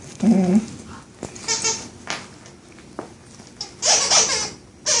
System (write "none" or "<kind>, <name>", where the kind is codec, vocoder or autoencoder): none